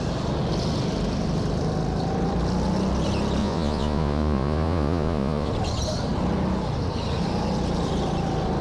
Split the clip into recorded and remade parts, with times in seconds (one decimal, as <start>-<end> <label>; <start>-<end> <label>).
0.0-3.4 recorded; 3.4-5.5 remade; 5.5-8.6 recorded